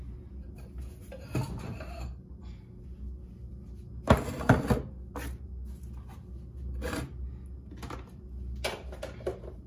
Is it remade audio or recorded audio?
recorded